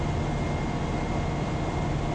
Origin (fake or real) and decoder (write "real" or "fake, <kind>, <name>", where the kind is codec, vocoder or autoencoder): real